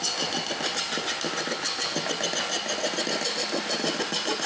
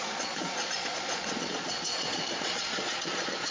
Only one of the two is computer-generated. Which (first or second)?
second